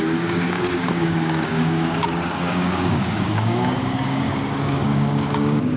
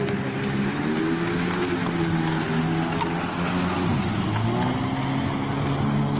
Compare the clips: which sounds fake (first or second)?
first